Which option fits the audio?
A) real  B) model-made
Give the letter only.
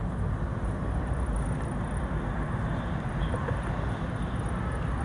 A